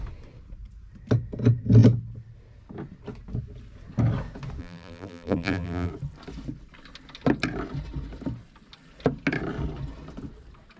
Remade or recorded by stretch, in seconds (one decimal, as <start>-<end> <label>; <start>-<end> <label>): 0.0-4.6 recorded; 4.6-5.9 remade; 5.9-10.8 recorded